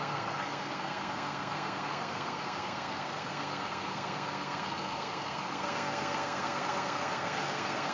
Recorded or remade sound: remade